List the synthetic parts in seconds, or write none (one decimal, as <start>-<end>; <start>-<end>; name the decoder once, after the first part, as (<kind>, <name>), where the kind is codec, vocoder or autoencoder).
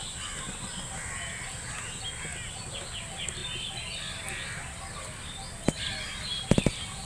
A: none